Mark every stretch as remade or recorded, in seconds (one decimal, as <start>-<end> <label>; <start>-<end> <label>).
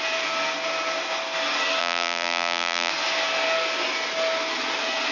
0.0-1.8 recorded; 1.8-2.9 remade; 2.9-5.1 recorded